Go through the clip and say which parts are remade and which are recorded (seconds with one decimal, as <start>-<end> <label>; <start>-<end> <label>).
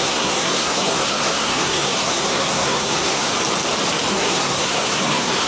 0.0-3.3 remade; 3.3-4.1 recorded; 4.1-5.5 remade